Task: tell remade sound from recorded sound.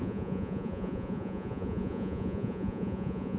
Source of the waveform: remade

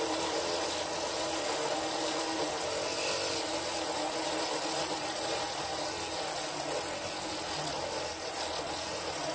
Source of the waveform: recorded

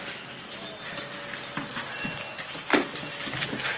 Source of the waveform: recorded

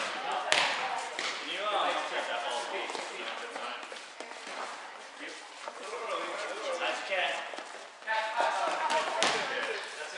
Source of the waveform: recorded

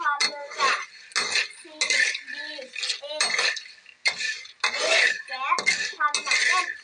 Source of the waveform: recorded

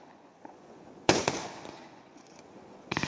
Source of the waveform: remade